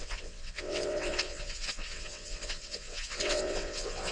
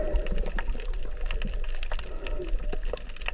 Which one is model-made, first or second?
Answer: first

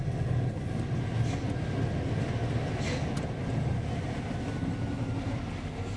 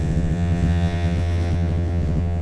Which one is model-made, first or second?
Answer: second